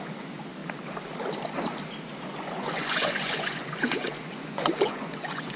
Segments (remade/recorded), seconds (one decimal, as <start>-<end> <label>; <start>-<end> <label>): 0.0-2.3 recorded; 2.3-5.6 remade